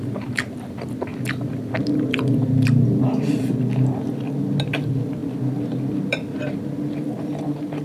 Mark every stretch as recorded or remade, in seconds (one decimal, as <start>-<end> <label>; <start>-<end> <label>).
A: 0.0-1.1 recorded; 1.1-3.5 remade; 3.5-5.2 recorded; 5.2-7.8 remade